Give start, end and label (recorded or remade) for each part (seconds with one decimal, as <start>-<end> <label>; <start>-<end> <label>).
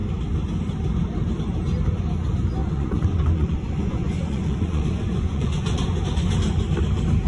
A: 0.0-2.6 recorded; 2.6-6.0 remade; 6.0-7.3 recorded